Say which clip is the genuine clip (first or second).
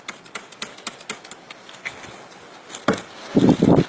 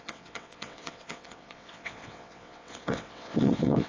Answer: first